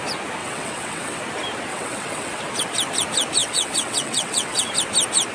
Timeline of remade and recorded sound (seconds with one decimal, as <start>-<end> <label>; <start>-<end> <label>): 0.0-0.4 recorded; 0.4-1.2 remade; 1.2-1.7 recorded; 1.7-2.4 remade; 2.4-3.4 recorded; 3.4-4.7 remade; 4.7-5.3 recorded